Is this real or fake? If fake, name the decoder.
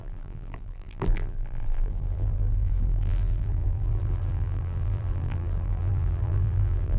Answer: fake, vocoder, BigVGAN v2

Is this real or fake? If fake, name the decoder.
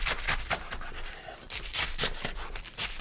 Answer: real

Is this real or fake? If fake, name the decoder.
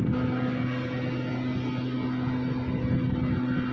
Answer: real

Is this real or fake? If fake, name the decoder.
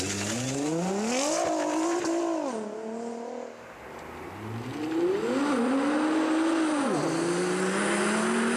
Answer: real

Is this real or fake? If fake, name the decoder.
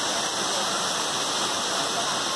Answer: real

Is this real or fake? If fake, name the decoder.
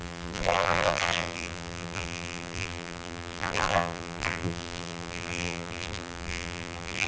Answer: fake, vocoder, BigVGAN v2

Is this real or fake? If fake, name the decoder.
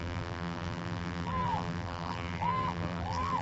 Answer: fake, vocoder, BigVGAN v2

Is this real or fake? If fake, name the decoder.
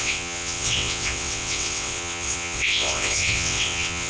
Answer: fake, vocoder, WaveNeXt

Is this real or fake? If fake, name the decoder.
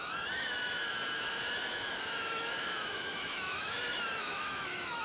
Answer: fake, autoencoder, DAC-VAE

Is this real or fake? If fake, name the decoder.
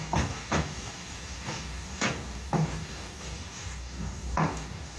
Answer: fake, codec, DAC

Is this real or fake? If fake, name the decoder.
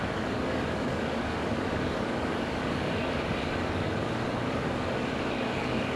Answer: fake, codec, DAC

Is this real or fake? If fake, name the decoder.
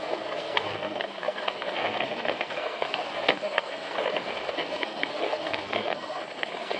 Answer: fake, codec, SNAC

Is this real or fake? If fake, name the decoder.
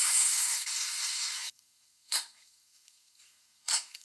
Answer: fake, codec, SNAC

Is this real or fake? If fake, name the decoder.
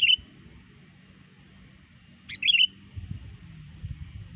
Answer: real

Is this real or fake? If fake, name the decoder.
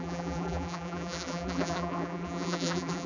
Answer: fake, vocoder, BigVGAN v2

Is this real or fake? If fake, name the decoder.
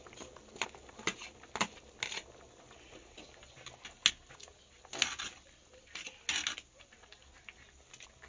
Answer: real